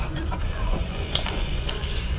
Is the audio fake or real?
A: fake